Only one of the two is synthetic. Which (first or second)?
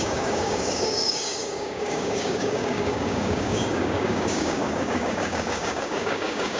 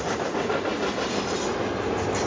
first